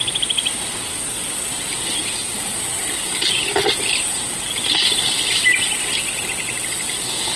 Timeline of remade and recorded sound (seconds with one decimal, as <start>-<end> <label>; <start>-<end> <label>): 0.0-7.4 recorded